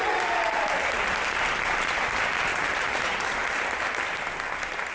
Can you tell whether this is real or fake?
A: real